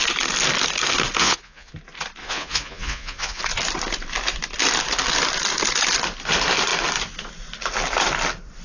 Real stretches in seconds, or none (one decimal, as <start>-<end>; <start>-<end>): 0.0-1.2; 1.7-2.2; 3.4-8.6

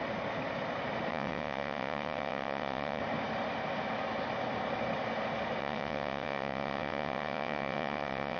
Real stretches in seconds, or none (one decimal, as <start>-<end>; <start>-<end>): 0.0-1.1; 3.0-5.6

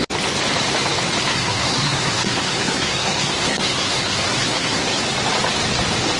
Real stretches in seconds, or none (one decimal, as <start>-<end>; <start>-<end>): 0.0-1.3; 5.0-6.2

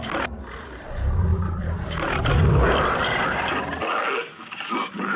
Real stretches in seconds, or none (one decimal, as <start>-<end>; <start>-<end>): 0.0-5.2